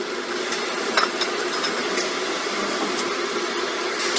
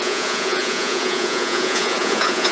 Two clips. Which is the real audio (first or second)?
first